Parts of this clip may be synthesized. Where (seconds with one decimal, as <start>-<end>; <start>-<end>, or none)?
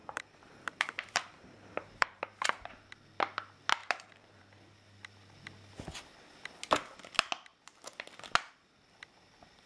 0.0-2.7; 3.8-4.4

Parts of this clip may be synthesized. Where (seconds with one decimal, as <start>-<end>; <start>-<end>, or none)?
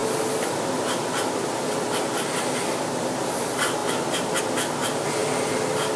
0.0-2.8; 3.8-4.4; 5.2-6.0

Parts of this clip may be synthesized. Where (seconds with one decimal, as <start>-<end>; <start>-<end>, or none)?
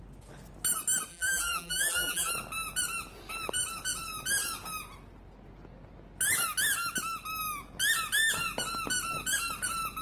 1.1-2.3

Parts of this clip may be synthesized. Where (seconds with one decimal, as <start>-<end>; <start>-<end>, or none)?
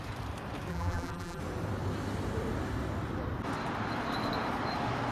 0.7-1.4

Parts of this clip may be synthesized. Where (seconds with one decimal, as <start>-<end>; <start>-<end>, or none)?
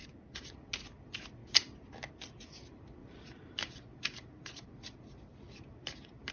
0.0-0.7; 3.0-6.3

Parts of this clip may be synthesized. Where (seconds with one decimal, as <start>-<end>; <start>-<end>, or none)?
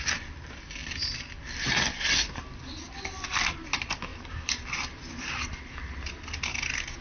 4.1-5.7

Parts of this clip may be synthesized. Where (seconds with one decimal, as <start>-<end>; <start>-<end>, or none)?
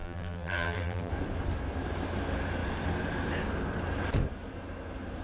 0.0-1.1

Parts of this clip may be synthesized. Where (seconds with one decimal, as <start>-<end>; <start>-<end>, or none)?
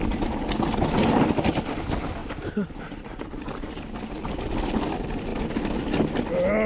2.2-3.4